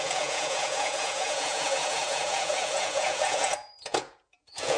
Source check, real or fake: fake